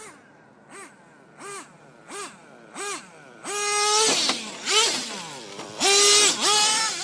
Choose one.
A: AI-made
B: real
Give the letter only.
B